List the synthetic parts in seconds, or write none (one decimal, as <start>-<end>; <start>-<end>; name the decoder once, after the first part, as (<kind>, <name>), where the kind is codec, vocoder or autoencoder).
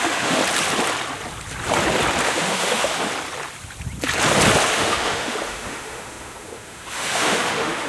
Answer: 0.0-0.4 (autoencoder, DAC-VAE); 2.2-3.1; 4.7-7.9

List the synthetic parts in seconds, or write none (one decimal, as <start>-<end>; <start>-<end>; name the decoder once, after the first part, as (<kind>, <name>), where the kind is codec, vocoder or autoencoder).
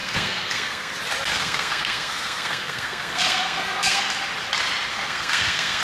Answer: 0.0-0.9 (codec, SNAC); 1.3-4.1; 4.9-5.8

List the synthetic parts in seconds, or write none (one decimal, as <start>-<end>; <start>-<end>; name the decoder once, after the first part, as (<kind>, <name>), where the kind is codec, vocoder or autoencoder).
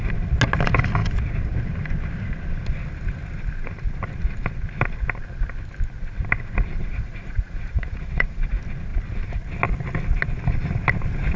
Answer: 6.8-8.5 (vocoder, Vocos)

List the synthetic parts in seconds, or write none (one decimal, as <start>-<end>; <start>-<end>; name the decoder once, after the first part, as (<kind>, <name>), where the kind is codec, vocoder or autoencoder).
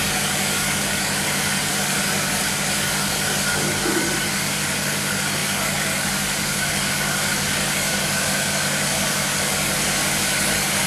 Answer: 0.0-10.9 (codec, DAC)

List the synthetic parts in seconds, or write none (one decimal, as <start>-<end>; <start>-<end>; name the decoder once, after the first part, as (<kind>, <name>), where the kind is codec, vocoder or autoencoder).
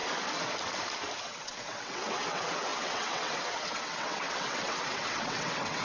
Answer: 1.2-5.8 (vocoder, WaveNeXt)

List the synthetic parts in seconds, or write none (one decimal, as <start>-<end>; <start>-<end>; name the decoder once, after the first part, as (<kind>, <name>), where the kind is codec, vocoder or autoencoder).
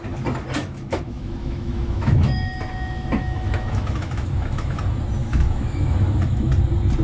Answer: 0.6-4.8 (autoencoder, DAC-VAE); 5.2-6.5